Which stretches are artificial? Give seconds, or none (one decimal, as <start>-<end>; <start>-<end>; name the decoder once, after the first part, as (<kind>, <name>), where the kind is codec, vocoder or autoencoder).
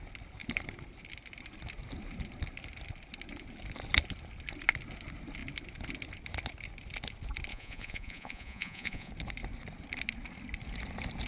7.5-9.1 (vocoder, Vocos)